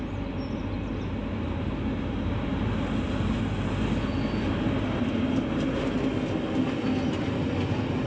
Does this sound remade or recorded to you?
recorded